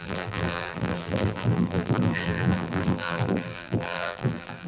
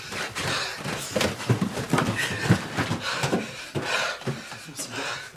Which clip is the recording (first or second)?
second